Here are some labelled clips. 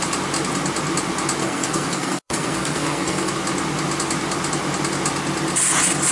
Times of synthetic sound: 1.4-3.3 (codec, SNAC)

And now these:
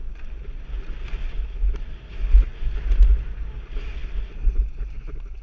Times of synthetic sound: none